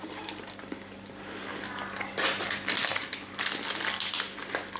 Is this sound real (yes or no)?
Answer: yes